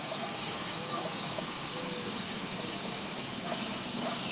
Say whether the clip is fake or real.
fake